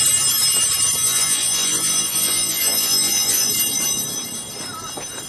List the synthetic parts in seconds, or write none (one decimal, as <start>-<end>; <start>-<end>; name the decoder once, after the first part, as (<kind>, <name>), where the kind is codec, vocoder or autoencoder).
1.0-3.5 (vocoder, Vocos)